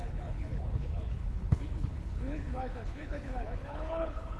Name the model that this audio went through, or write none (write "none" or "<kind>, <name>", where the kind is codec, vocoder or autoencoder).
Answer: codec, HILCodec